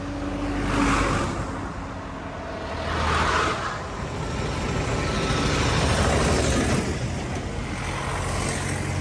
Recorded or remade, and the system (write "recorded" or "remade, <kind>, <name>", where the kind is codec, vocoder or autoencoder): recorded